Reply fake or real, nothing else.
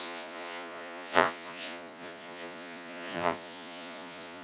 fake